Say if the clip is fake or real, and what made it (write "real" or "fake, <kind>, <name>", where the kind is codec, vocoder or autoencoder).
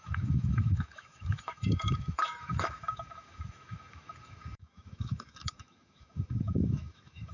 fake, autoencoder, DAC-VAE